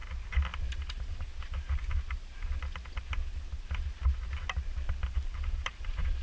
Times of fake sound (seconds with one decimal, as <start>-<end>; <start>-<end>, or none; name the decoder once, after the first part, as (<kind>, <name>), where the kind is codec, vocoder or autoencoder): 0.7-1.3 (vocoder, BigVGAN v2); 5.0-6.2